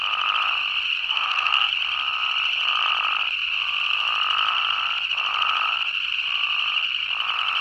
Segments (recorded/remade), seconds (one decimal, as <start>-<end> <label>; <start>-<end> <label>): 0.0-1.0 recorded; 1.0-1.7 remade; 1.7-7.6 recorded